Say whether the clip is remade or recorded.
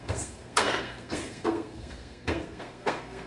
remade